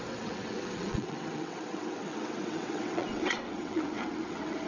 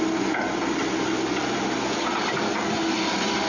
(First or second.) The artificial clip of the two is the first